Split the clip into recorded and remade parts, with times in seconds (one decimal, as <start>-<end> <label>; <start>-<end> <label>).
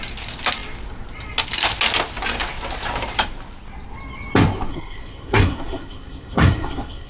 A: 0.0-4.7 recorded; 4.7-7.1 remade